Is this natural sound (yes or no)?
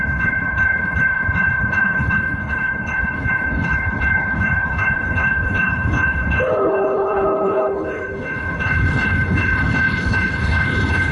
no